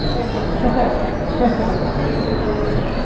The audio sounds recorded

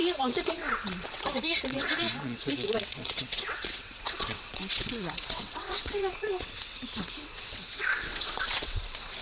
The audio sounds remade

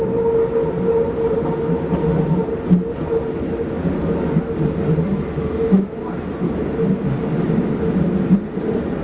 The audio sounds recorded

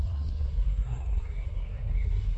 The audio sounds remade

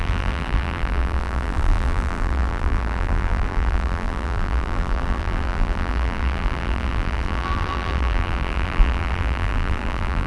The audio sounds remade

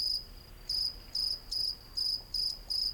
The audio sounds remade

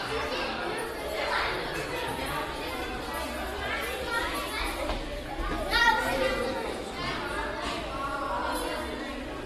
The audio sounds recorded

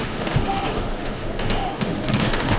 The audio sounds remade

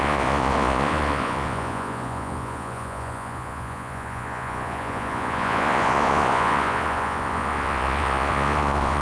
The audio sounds remade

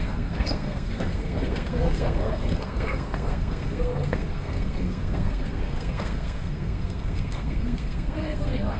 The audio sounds remade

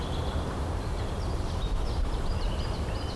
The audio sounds remade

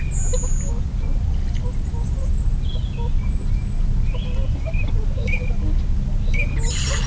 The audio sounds recorded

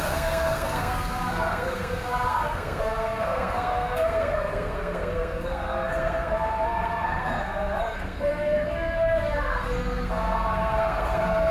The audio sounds remade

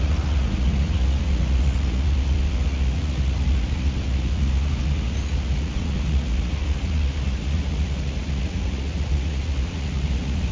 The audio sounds remade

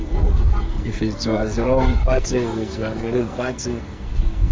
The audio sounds remade